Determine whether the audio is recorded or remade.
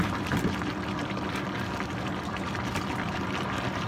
remade